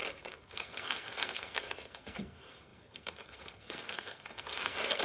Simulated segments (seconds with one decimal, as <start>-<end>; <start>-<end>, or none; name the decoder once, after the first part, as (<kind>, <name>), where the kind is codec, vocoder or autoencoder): 0.0-5.0 (codec, SNAC)

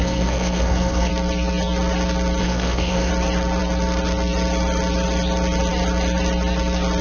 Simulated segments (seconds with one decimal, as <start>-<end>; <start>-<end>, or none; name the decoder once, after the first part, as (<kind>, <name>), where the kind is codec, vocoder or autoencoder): 0.0-1.1 (codec, SNAC); 2.4-3.1

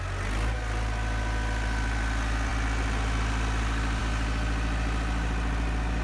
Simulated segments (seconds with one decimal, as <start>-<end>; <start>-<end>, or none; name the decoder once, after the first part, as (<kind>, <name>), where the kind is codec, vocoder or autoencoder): none

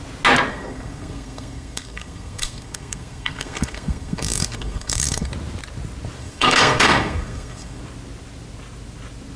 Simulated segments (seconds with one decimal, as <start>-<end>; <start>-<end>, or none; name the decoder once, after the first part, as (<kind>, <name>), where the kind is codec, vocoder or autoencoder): 0.5-5.3 (codec, SNAC); 6.2-7.8

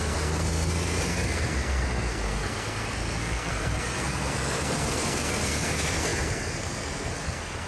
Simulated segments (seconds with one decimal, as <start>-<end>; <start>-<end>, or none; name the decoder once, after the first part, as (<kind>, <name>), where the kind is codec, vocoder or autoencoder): 0.0-7.7 (codec, SNAC)

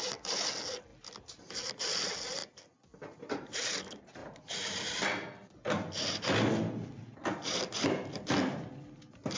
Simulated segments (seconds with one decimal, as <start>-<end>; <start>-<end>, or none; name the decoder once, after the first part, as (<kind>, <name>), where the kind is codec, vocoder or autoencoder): none

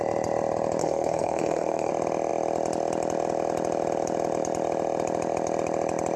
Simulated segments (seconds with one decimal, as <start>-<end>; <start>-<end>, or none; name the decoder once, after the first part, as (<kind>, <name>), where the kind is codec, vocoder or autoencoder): 0.8-1.9 (codec, SNAC)

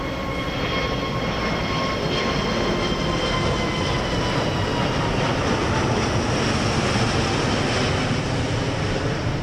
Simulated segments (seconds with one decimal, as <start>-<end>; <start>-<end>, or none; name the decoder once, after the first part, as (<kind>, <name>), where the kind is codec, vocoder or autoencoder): none